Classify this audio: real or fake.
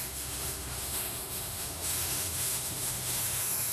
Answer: fake